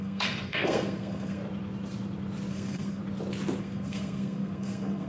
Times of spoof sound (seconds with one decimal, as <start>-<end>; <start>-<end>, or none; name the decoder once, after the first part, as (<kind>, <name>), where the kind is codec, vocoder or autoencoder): 0.0-1.4 (codec, SNAC); 2.5-3.0; 3.6-5.1